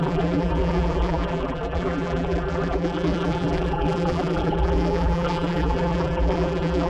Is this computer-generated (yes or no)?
yes